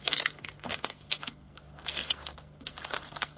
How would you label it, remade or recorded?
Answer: remade